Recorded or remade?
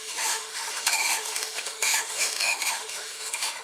remade